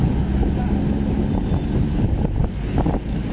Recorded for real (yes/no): yes